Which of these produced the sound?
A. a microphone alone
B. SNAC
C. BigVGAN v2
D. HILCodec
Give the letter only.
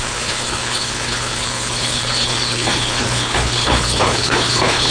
D